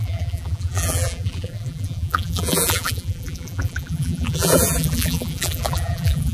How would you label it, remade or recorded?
remade